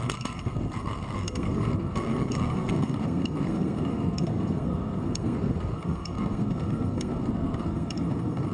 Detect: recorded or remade remade